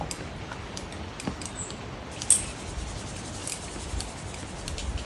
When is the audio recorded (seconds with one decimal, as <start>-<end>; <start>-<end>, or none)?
0.0-3.4; 4.6-5.1